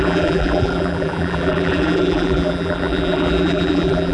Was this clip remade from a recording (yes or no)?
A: yes